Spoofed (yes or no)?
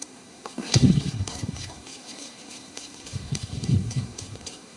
yes